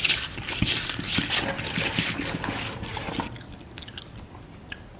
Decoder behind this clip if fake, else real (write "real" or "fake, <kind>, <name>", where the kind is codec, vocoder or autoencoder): real